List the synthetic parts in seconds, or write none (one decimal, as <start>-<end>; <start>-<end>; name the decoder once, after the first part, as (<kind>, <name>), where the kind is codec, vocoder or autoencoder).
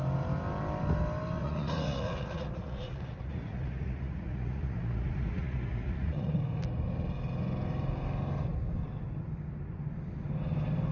1.4-6.4 (vocoder, Vocos)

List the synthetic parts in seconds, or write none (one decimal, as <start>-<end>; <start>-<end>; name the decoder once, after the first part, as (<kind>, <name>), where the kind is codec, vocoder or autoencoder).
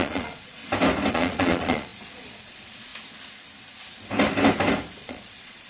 0.0-0.6 (vocoder, Vocos); 1.1-2.9; 5.0-5.7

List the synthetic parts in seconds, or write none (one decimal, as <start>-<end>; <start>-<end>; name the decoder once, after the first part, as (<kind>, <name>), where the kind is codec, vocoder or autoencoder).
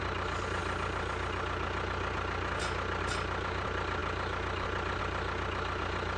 none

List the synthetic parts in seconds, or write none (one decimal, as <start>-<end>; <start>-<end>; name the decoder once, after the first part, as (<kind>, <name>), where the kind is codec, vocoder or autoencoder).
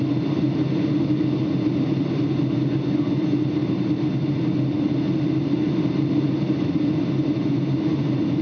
none